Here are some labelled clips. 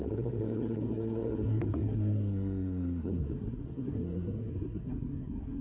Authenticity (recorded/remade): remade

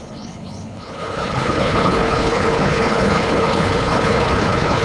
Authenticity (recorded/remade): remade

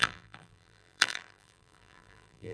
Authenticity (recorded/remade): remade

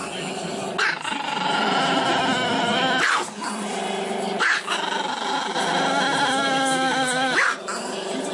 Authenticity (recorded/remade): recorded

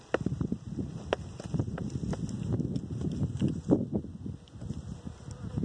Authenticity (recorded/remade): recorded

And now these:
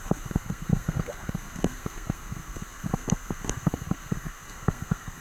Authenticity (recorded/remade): remade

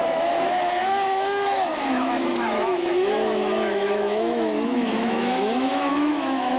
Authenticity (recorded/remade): remade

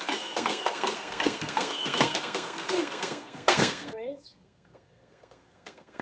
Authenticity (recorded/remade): remade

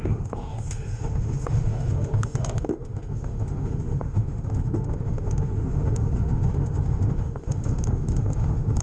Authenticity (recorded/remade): remade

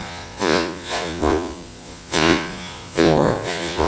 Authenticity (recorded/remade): remade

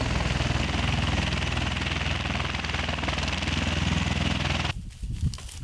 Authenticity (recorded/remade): recorded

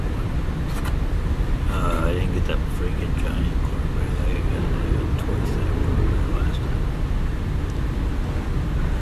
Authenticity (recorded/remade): recorded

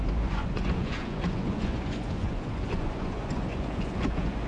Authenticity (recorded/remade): remade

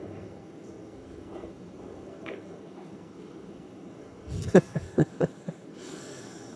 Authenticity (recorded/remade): remade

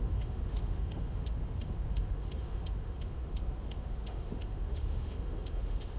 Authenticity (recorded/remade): remade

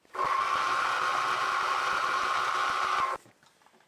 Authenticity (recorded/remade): recorded